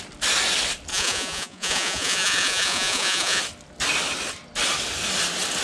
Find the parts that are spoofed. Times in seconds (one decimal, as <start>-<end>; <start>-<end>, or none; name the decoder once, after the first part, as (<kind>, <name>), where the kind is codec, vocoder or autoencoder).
0.9-3.4 (vocoder, Vocos)